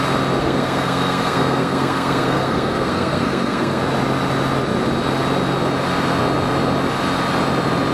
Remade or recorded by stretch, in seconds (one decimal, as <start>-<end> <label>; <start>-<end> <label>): 0.0-0.4 recorded; 0.4-3.8 remade; 3.8-7.9 recorded